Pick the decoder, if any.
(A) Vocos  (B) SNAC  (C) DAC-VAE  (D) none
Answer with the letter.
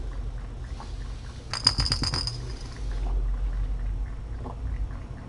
D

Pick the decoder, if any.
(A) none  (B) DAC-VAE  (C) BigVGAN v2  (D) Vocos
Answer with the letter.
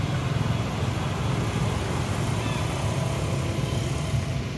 A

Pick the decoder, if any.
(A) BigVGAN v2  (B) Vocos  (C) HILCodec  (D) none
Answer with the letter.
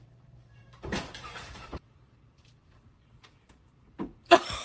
A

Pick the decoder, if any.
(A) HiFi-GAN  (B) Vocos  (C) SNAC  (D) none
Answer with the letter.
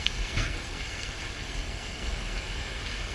C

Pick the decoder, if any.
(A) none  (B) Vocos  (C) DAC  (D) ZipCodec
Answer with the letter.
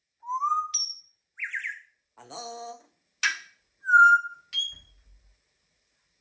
A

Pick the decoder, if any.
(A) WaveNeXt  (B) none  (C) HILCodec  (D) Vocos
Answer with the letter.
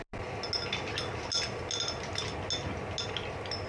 B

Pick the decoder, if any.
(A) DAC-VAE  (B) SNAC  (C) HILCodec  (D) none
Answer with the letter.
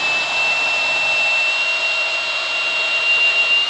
D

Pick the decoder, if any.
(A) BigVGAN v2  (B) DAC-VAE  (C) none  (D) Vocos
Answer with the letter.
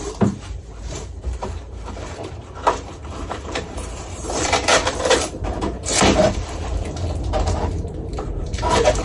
A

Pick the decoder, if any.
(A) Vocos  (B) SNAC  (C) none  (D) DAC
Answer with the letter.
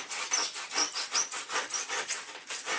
C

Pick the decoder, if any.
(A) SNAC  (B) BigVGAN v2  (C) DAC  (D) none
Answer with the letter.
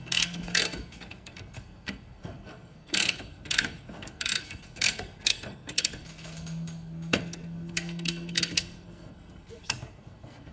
A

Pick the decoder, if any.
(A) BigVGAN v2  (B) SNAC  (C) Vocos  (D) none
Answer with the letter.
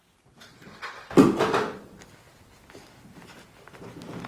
D